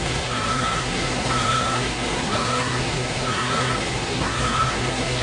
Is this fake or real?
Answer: fake